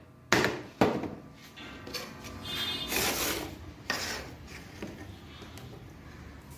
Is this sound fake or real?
real